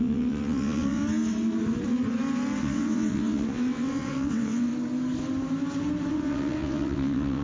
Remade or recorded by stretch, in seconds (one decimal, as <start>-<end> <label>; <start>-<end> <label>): 0.0-1.0 remade; 1.0-2.6 recorded; 2.6-4.7 remade; 4.7-6.1 recorded; 6.1-7.4 remade

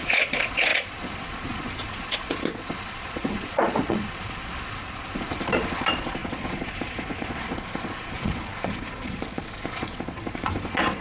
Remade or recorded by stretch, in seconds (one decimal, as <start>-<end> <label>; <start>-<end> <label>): 0.0-11.0 remade

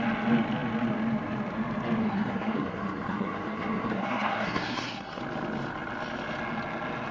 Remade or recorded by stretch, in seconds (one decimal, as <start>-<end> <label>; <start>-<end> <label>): 0.0-2.0 recorded; 2.0-5.2 remade; 5.2-7.1 recorded

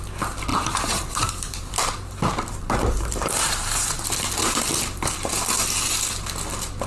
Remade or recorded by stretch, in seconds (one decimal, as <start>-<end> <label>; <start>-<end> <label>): 0.0-0.5 recorded; 0.5-4.0 remade; 4.0-4.4 recorded; 4.4-5.3 remade; 5.3-6.9 recorded

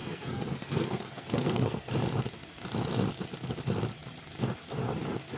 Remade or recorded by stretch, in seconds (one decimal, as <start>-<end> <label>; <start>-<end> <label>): 0.0-1.9 remade; 1.9-5.4 recorded

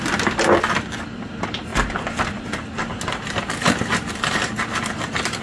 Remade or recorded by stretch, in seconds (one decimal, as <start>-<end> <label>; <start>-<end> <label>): 0.0-5.4 recorded

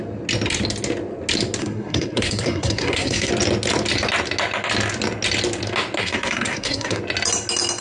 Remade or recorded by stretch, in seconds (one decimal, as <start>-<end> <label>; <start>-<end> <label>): 0.0-1.6 recorded; 1.6-3.3 remade; 3.3-6.0 recorded; 6.0-7.0 remade; 7.0-7.8 recorded

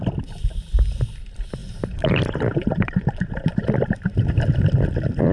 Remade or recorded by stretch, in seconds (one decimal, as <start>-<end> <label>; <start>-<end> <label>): 0.0-1.6 recorded; 1.6-4.8 remade; 4.8-5.3 recorded